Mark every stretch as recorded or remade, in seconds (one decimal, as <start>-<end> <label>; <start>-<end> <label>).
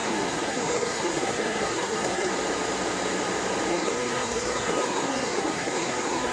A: 0.0-2.3 remade; 2.3-3.7 recorded; 3.7-6.3 remade